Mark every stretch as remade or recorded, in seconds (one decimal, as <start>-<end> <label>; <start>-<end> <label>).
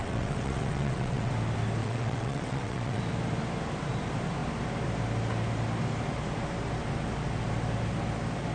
0.0-1.3 remade; 1.3-1.8 recorded; 1.8-3.0 remade; 3.0-8.5 recorded